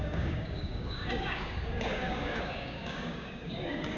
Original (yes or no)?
no